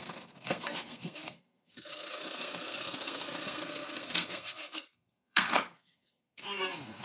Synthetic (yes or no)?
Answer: yes